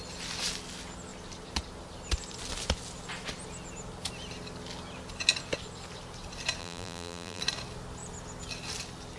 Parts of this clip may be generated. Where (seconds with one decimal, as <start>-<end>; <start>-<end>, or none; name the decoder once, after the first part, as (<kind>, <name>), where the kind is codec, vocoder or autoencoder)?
6.6-7.4 (vocoder, BigVGAN v2)